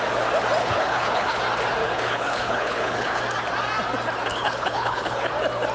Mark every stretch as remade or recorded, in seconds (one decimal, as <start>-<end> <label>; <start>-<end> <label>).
0.0-0.6 recorded; 0.6-1.4 remade; 1.4-1.8 recorded; 1.8-3.2 remade; 3.2-4.3 recorded; 4.3-5.3 remade; 5.3-5.7 recorded